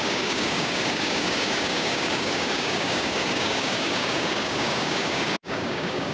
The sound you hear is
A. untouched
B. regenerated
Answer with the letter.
B